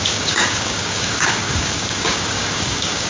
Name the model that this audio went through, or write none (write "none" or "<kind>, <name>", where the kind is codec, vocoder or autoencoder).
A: codec, DAC